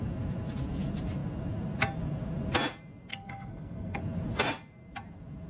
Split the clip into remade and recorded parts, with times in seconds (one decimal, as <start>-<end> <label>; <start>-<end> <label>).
0.0-3.1 recorded; 3.1-4.0 remade; 4.0-5.5 recorded